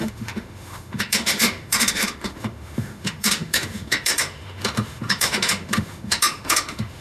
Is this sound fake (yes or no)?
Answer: yes